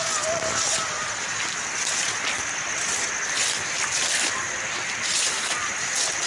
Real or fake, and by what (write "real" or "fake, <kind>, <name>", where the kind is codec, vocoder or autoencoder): real